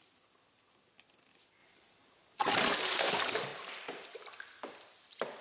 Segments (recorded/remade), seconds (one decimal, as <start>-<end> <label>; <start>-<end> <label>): 0.0-1.6 recorded; 1.6-2.6 remade; 2.6-3.5 recorded; 3.5-4.3 remade; 4.3-5.4 recorded